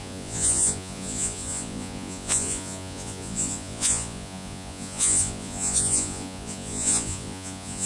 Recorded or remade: remade